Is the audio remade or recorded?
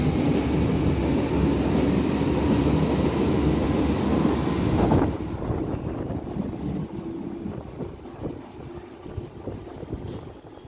recorded